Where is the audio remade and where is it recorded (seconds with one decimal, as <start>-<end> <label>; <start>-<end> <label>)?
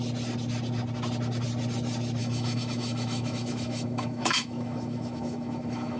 0.0-2.2 recorded; 2.2-6.0 remade